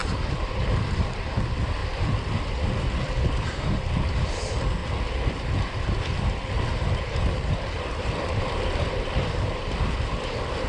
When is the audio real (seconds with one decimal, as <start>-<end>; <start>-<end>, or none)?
4.8-7.7